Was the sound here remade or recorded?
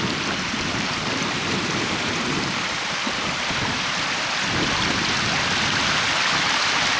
remade